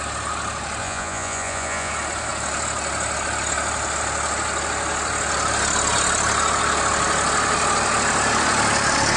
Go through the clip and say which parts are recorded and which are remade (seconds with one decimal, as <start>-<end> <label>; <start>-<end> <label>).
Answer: 0.0-0.8 recorded; 0.8-1.9 remade; 1.9-9.2 recorded